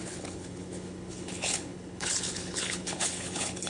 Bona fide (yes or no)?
no